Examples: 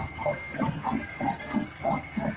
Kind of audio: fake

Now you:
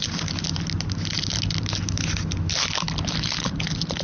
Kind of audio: real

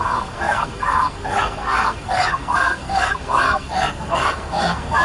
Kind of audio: fake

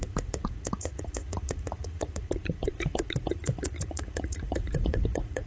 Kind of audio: fake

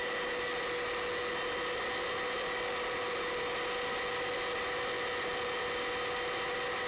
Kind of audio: real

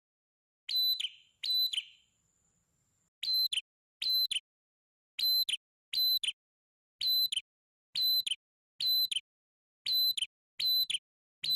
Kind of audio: real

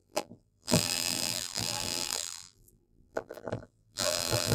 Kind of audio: fake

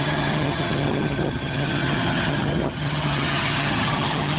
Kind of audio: fake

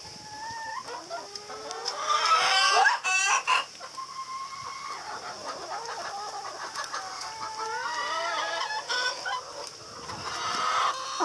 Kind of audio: real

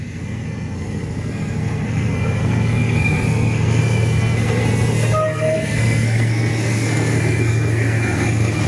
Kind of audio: fake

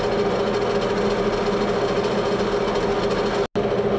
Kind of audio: real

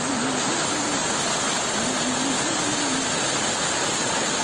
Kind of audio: real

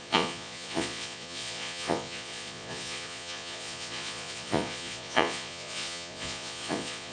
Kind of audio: fake